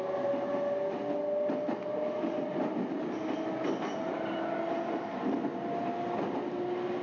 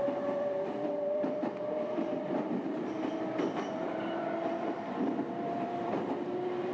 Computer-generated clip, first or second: second